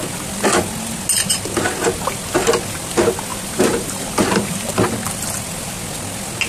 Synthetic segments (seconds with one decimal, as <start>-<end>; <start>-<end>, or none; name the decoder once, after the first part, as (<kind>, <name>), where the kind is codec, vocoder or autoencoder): 3.3-4.7 (vocoder, BigVGAN v2)